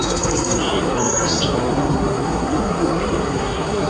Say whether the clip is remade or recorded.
remade